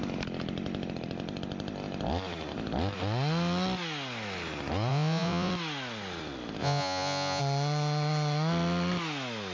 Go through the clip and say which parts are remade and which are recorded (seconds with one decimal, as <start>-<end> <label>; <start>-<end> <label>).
0.0-4.9 recorded; 4.9-5.5 remade; 5.5-6.6 recorded; 6.6-7.4 remade; 7.4-9.5 recorded